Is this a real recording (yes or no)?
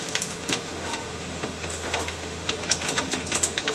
no